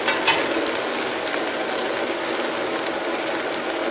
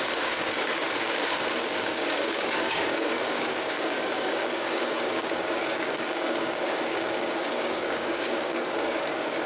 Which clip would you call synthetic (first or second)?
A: second